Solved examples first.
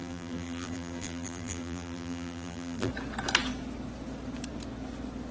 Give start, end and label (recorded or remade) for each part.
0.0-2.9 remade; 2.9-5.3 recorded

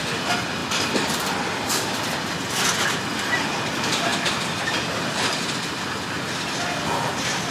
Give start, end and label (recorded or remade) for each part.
0.0-0.6 recorded; 0.6-2.3 remade; 2.3-4.1 recorded; 4.1-6.1 remade; 6.1-7.5 recorded